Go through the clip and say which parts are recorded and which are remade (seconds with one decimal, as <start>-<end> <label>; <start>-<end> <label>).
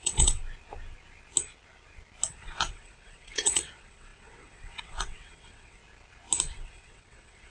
0.0-0.4 remade; 0.4-2.3 recorded; 2.3-5.8 remade; 5.8-6.5 recorded; 6.5-7.5 remade